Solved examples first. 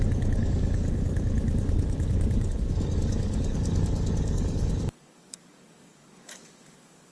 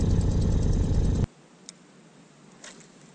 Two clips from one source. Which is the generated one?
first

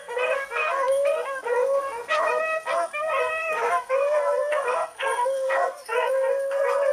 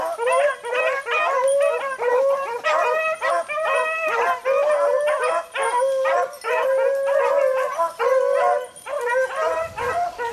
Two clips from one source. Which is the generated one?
first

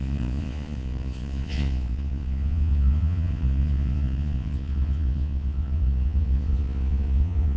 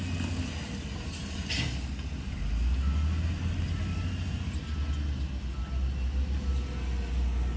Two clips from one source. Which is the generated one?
first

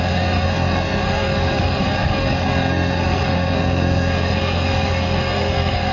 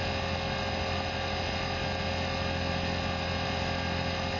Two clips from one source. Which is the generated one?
first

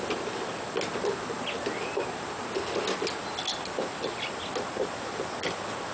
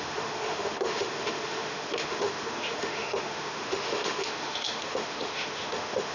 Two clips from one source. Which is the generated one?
second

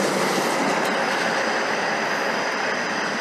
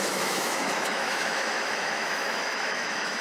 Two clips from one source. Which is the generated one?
second